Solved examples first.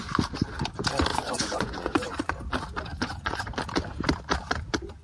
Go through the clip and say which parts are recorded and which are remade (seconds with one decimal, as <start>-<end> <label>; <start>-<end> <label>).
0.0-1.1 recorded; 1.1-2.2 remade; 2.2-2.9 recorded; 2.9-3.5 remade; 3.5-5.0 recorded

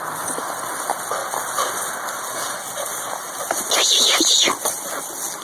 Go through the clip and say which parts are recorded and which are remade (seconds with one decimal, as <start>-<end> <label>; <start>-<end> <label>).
0.0-1.2 recorded; 1.2-3.7 remade; 3.7-5.4 recorded

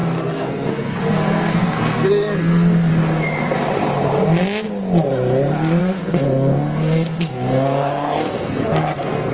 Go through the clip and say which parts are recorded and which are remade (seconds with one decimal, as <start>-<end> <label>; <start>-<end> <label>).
0.0-2.9 remade; 2.9-5.8 recorded; 5.8-9.3 remade